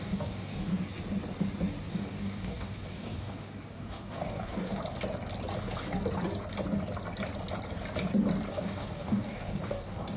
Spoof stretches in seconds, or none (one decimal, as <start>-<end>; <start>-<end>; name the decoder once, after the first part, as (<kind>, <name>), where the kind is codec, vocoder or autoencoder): 0.0-0.7 (codec, DAC); 1.9-4.8; 8.5-10.2